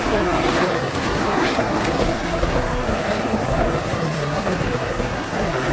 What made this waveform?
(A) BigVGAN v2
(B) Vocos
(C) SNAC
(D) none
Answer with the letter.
C